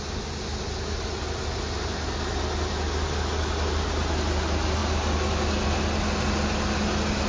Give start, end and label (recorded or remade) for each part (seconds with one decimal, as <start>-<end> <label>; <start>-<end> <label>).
0.0-7.3 recorded